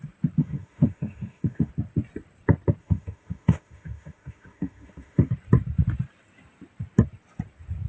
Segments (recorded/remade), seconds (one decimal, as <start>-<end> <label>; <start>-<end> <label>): 0.0-0.4 recorded; 0.4-1.7 remade; 1.7-2.8 recorded; 2.8-5.3 remade; 5.3-7.9 recorded